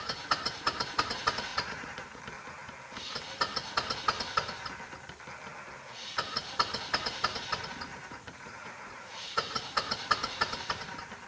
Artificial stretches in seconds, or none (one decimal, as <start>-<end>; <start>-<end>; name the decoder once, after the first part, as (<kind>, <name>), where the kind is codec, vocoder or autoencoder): 1.5-2.2 (vocoder, Vocos); 7.9-9.6